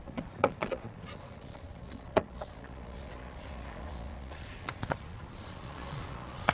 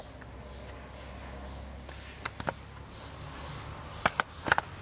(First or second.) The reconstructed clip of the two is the first